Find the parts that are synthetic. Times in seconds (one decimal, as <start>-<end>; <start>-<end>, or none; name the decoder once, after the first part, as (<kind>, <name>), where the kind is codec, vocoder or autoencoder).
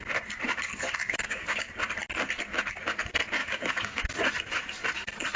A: 1.0-1.7 (codec, DAC); 3.4-4.0